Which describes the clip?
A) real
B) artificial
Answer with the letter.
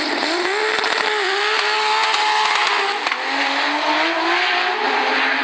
A